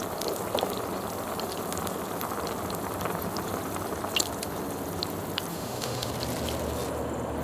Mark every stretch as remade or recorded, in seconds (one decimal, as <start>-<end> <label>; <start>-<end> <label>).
0.0-5.5 recorded; 5.5-6.1 remade; 6.1-7.4 recorded